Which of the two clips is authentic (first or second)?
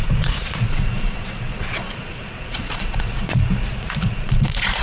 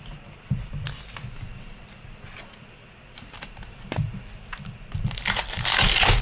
second